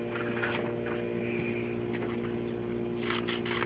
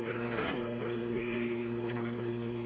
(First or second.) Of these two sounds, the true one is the first